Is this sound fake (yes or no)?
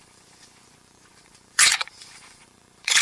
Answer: yes